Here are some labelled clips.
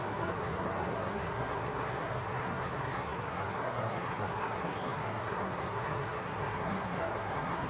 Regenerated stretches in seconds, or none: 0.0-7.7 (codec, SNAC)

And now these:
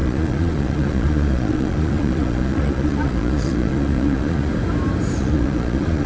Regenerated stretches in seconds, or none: 0.0-4.5 (vocoder, Vocos); 5.2-6.1